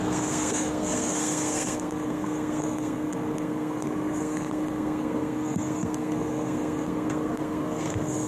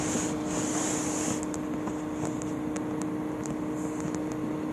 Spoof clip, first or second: first